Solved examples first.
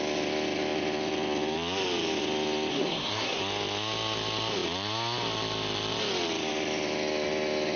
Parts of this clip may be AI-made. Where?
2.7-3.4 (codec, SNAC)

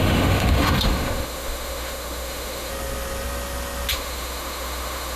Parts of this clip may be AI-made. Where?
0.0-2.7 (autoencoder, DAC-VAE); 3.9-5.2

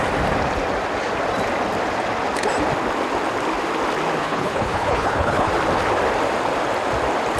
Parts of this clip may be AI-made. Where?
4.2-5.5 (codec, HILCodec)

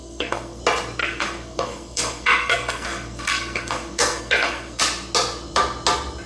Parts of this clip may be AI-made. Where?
0.0-0.6 (codec, SNAC); 1.0-4.8

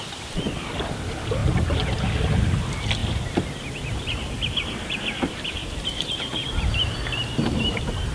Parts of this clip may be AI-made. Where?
0.0-1.4 (vocoder, BigVGAN v2); 2.1-3.0; 3.6-5.6; 6.6-8.1

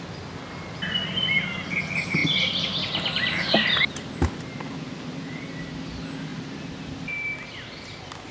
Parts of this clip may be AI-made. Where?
none

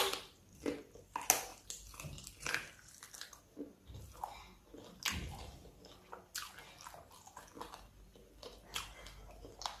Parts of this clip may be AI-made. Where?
none